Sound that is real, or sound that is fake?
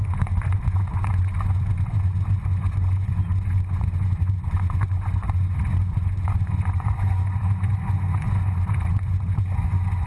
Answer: fake